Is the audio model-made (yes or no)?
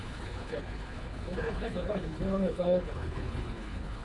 yes